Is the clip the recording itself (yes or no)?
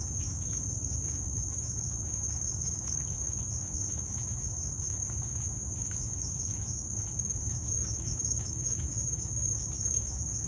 no